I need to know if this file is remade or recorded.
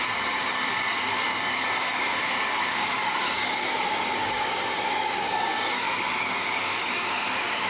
remade